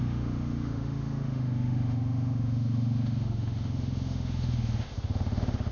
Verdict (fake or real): fake